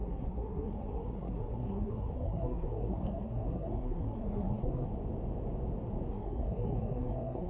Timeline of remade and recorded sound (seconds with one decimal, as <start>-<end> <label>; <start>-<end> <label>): 0.0-4.9 remade; 4.9-6.1 recorded; 6.1-7.5 remade